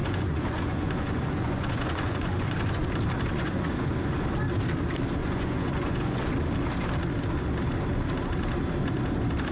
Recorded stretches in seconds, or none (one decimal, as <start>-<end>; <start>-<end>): 2.9-3.3; 3.9-5.2; 6.3-9.5

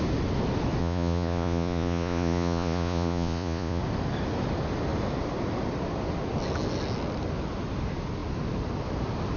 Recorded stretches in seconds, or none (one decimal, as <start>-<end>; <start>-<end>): 0.0-0.8; 3.8-9.4

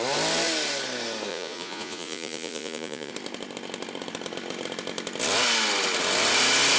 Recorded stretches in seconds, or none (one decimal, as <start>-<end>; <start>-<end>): 0.0-1.3; 3.1-6.8